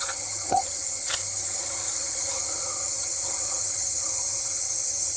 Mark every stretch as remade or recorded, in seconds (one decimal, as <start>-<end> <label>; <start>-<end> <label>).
0.0-5.2 remade